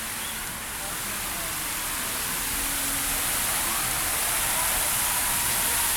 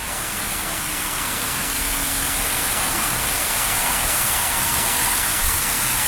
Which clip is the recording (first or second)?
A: first